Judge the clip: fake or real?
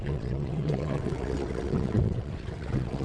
fake